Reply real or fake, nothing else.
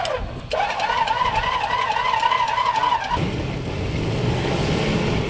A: real